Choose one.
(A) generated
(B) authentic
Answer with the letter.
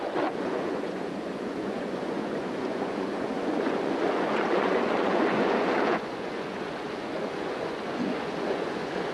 A